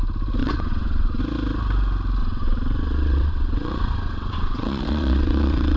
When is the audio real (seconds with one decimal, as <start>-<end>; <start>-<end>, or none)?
0.0-0.4; 1.2-2.2